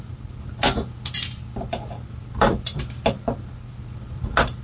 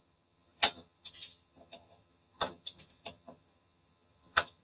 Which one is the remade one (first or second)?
second